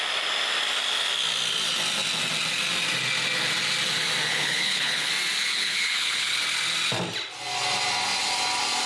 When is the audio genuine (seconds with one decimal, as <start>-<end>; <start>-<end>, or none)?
0.0-4.3; 5.1-5.5; 6.4-8.9